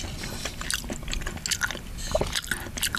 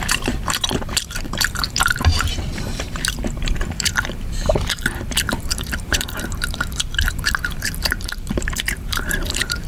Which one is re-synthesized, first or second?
second